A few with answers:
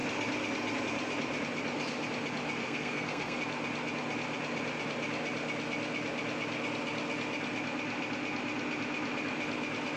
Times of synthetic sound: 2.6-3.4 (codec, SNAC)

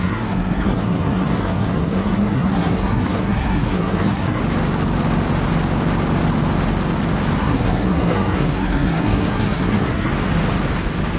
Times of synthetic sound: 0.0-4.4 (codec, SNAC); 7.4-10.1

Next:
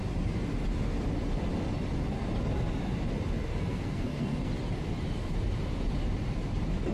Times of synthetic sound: 3.5-4.5 (codec, SNAC)